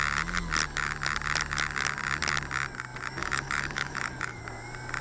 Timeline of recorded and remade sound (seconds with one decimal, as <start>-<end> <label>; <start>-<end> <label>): 0.0-3.2 recorded; 3.2-4.4 remade; 4.4-5.0 recorded